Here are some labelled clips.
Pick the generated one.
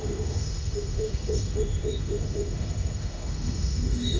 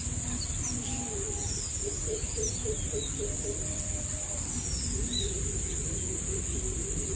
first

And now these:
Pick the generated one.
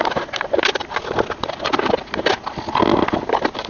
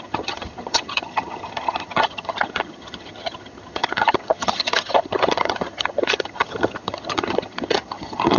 second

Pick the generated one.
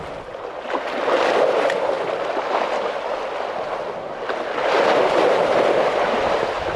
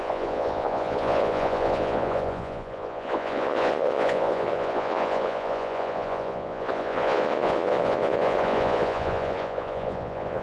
second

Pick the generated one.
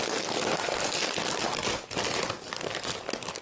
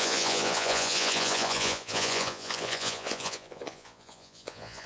second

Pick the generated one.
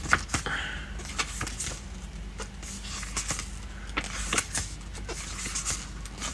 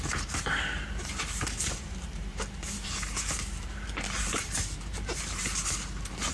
second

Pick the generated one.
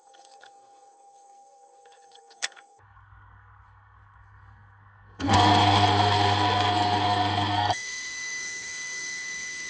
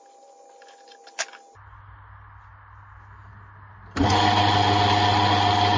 first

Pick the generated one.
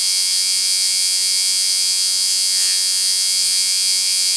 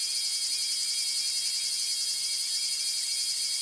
first